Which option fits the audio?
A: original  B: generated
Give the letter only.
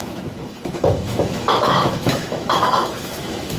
B